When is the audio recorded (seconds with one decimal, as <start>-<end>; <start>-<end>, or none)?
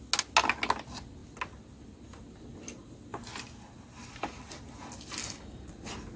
0.0-5.2; 5.7-6.2